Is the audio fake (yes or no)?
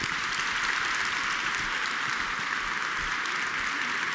no